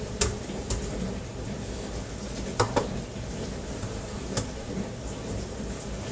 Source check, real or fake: real